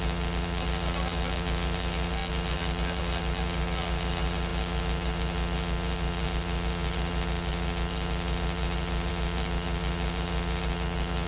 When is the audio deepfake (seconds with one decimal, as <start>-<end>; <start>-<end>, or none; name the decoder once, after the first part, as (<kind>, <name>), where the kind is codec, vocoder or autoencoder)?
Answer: 0.0-11.3 (vocoder, BigVGAN v2)